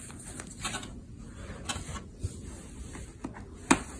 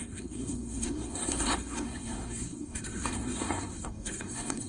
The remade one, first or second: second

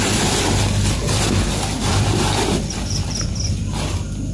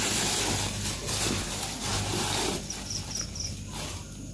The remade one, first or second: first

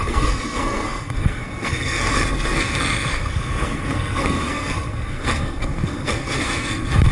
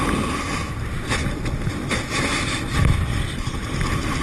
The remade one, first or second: first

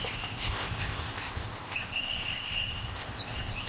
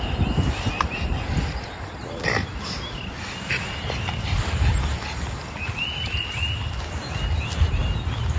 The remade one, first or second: first